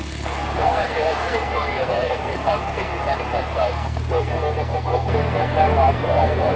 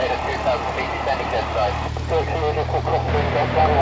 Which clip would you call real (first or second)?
second